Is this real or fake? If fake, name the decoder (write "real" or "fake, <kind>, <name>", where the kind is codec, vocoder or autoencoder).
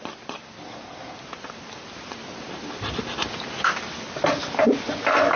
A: real